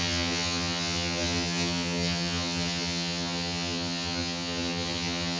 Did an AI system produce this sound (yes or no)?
yes